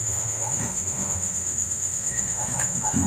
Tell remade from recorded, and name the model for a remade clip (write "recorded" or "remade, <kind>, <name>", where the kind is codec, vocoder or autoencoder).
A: remade, autoencoder, DAC-VAE